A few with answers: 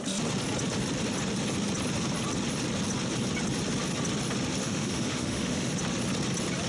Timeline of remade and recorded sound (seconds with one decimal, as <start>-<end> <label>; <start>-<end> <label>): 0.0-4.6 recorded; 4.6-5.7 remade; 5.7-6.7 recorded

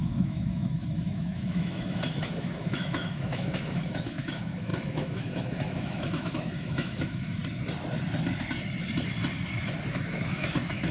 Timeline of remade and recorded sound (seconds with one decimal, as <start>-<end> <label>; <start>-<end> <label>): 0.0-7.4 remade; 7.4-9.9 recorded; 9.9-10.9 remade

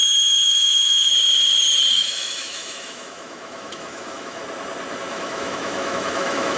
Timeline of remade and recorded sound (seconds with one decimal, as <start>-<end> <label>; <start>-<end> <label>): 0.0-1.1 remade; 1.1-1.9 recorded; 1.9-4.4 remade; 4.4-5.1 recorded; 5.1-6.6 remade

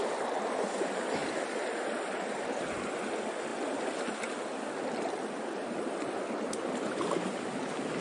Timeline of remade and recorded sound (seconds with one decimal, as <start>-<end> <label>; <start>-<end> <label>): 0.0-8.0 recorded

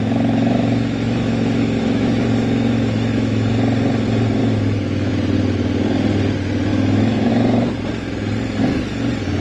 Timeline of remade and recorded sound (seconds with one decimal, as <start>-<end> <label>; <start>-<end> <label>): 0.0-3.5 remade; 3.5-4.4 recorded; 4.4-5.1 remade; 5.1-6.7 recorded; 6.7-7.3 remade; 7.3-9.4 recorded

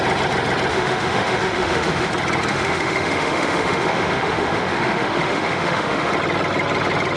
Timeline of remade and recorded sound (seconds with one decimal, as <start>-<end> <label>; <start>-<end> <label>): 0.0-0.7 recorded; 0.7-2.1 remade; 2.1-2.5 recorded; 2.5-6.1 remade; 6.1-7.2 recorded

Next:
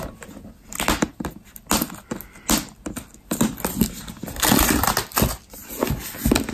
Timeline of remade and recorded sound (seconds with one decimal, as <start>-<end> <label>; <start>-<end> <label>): 0.0-6.5 recorded